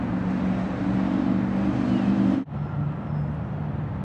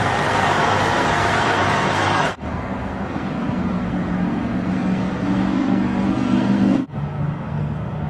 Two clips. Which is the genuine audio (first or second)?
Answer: first